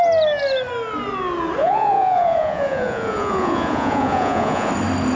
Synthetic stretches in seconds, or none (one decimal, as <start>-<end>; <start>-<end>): 1.6-4.7